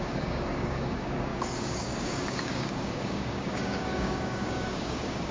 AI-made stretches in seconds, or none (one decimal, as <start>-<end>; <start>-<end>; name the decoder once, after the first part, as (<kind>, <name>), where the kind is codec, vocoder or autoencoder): 0.0-5.3 (codec, DAC)